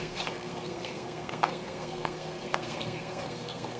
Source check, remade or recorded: remade